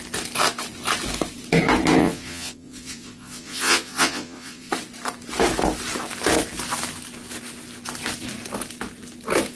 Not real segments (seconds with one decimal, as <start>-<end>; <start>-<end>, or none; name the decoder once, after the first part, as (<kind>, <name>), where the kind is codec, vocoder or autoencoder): 2.0-4.7 (vocoder, Vocos)